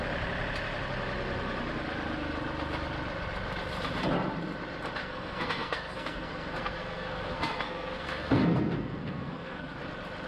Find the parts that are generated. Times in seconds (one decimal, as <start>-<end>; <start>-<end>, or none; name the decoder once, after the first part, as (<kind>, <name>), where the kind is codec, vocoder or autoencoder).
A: 5.0-9.8 (codec, SNAC)